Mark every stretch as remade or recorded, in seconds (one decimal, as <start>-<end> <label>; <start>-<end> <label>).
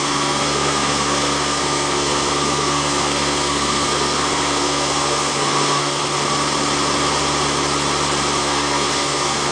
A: 0.0-6.0 remade; 6.0-8.4 recorded; 8.4-9.5 remade